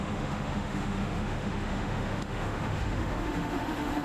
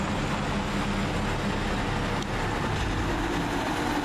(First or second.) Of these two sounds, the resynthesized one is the first